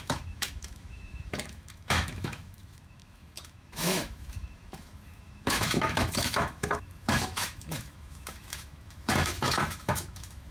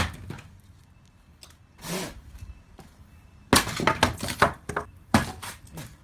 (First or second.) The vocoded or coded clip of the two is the first